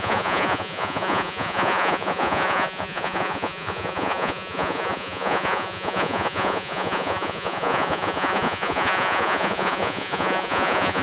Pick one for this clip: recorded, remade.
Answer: remade